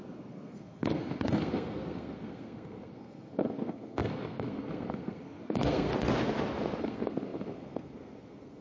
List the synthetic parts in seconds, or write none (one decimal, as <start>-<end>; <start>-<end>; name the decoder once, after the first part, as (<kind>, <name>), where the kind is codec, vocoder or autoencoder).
0.0-5.9 (codec, SNAC); 6.8-8.6